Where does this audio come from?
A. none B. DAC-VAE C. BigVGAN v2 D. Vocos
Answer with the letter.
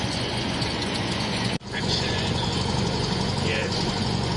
D